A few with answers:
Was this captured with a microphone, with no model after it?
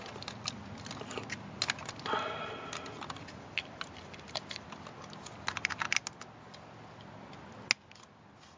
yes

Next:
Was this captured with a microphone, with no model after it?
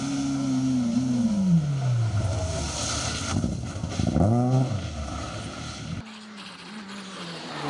yes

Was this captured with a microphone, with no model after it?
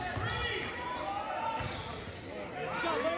yes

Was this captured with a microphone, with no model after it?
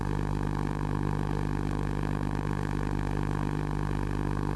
no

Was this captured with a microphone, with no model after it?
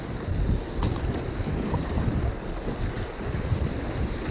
yes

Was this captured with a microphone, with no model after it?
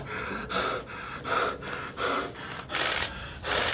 yes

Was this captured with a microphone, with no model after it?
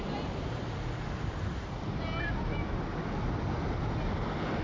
yes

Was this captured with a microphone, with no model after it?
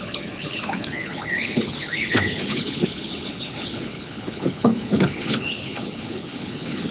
no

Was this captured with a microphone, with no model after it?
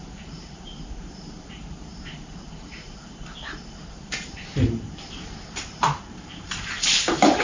no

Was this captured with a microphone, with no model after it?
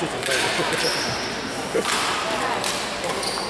yes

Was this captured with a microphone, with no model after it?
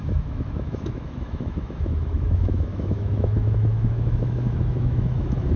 no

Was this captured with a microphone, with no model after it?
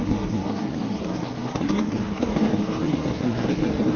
no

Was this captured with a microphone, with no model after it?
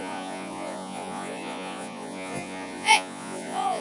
no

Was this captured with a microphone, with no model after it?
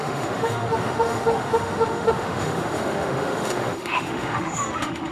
no